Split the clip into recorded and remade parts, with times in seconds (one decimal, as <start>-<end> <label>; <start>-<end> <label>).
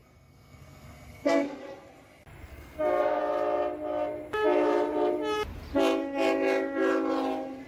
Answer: 0.0-1.6 remade; 1.6-2.5 recorded; 2.5-3.2 remade; 3.2-7.7 recorded